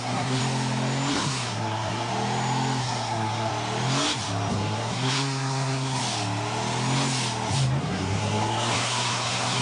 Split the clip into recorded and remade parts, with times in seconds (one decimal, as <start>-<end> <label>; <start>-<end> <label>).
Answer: 0.0-0.4 remade; 0.4-1.1 recorded; 1.1-2.1 remade; 2.1-2.8 recorded; 2.8-3.5 remade; 3.5-4.5 recorded; 4.5-6.0 remade; 6.0-7.8 recorded; 7.8-9.6 remade